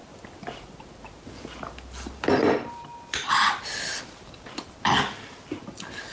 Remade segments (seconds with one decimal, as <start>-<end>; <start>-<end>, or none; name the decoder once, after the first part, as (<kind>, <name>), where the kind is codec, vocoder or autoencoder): none